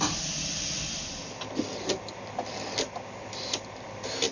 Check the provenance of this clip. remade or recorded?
recorded